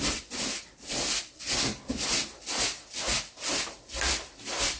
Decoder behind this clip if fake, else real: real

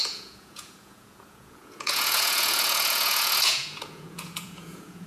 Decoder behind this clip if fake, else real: fake, vocoder, Vocos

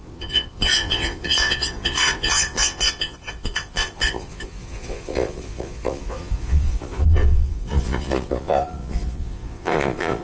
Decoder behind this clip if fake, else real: fake, vocoder, Vocos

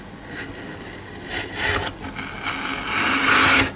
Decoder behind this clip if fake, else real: real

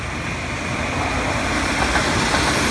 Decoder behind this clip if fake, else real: real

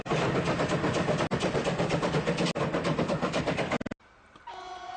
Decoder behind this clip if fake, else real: real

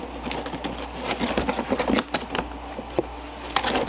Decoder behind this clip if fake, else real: real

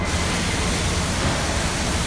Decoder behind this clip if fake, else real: real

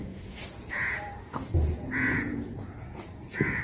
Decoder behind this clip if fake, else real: fake, vocoder, Vocos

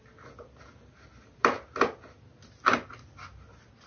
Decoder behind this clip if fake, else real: real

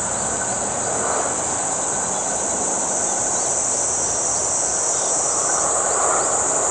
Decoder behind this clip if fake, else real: real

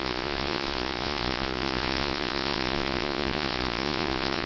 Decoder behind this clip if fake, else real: fake, vocoder, Vocos